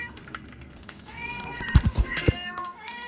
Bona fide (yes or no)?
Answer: no